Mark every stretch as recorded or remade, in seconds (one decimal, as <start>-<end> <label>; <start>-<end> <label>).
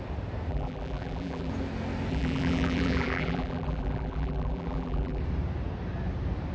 0.0-0.5 recorded; 0.5-1.5 remade; 1.5-2.1 recorded; 2.1-5.2 remade; 5.2-6.5 recorded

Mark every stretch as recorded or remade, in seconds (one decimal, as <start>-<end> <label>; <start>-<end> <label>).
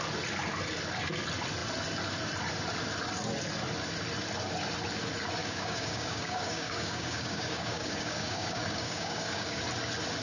0.0-5.4 recorded; 5.4-9.6 remade; 9.6-10.2 recorded